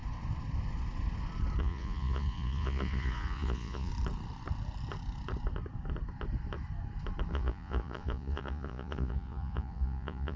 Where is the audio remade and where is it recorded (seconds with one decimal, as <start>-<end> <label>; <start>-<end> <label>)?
0.0-1.6 recorded; 1.6-3.9 remade; 3.9-7.3 recorded; 7.3-10.4 remade